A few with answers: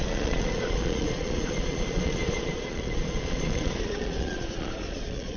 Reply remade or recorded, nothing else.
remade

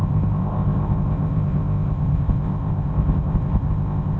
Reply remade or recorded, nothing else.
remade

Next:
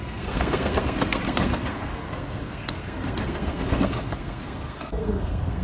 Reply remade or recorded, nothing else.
remade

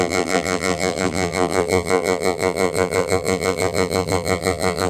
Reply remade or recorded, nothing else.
remade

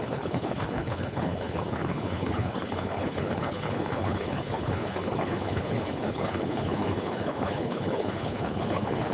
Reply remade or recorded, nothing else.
remade